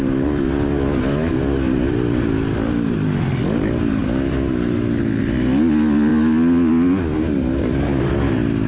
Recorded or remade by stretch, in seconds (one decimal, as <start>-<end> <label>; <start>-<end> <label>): 0.0-8.7 recorded